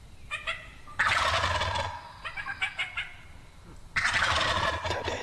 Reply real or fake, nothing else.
real